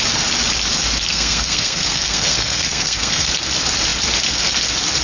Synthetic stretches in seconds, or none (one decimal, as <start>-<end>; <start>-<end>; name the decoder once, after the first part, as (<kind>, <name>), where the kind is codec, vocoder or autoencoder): 1.1-3.3 (codec, SNAC)